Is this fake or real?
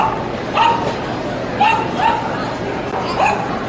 real